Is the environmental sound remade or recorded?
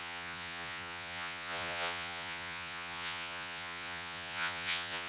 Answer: remade